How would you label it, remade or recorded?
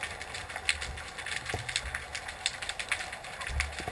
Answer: recorded